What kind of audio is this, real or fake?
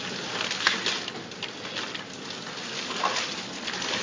real